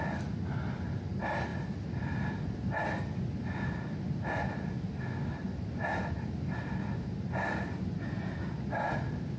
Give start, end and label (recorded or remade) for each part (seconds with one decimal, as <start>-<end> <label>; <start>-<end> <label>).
0.0-9.4 recorded